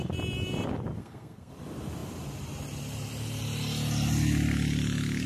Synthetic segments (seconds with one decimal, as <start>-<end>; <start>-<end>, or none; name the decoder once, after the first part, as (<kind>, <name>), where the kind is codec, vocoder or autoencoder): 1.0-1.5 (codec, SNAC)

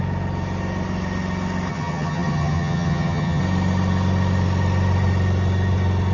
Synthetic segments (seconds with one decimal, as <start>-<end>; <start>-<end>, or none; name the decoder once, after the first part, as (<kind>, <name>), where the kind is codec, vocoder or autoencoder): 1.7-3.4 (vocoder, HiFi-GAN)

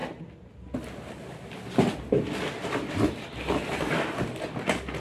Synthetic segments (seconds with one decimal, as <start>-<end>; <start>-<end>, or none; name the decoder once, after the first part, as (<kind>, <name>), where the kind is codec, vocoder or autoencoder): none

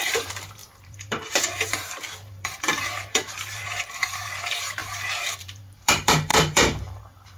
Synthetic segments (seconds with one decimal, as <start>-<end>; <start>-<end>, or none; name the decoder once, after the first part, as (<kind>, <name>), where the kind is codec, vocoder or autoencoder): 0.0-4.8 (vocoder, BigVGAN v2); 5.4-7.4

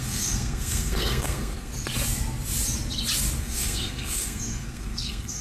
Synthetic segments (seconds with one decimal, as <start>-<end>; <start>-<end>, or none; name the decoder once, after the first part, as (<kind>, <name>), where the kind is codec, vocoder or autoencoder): 0.0-1.7 (codec, SNAC); 3.4-5.4

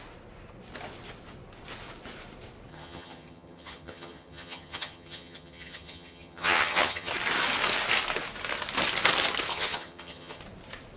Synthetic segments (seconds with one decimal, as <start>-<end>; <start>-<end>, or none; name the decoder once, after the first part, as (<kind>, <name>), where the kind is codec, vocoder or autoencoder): 2.7-7.1 (vocoder, HiFi-GAN); 9.5-10.4

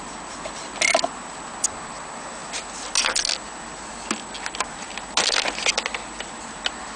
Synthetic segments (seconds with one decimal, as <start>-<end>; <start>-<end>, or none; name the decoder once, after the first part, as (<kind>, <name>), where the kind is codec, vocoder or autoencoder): none